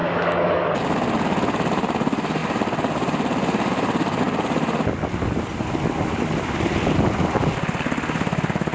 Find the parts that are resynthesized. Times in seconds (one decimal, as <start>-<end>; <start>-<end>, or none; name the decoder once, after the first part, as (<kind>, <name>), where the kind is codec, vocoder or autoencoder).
0.0-0.8 (codec, DAC)